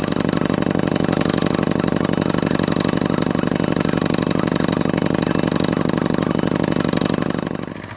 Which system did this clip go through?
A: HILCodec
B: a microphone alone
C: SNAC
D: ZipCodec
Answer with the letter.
B